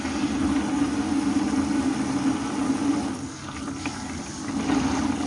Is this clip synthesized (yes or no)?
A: no